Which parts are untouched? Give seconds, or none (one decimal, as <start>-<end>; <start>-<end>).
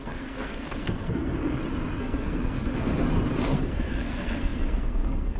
1.4-2.0; 2.9-3.5